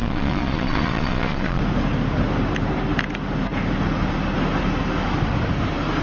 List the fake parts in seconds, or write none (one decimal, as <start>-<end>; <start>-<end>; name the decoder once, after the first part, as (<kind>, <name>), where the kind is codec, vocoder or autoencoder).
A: 0.0-1.6 (vocoder, Vocos)

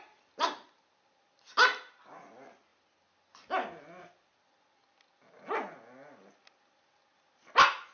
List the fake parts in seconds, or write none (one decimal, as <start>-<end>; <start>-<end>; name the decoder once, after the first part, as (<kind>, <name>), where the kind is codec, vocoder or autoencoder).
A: none